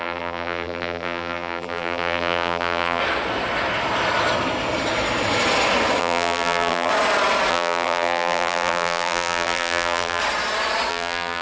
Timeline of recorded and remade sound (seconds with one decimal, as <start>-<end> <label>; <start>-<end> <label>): 0.0-3.0 remade; 3.0-6.0 recorded; 6.0-6.9 remade; 6.9-7.5 recorded; 7.5-10.2 remade; 10.2-10.9 recorded; 10.9-11.4 remade